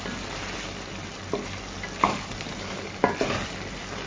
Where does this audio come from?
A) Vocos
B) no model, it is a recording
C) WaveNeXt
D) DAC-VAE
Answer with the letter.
B